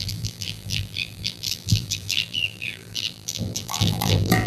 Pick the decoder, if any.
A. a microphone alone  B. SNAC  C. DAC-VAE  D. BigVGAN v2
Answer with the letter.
D